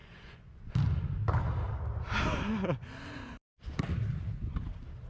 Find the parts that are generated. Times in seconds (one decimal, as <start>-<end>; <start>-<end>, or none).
0.0-0.7